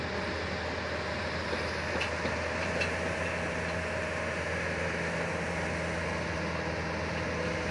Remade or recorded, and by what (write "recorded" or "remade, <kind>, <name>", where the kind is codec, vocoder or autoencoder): recorded